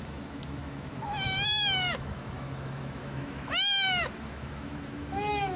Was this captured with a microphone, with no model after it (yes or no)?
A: no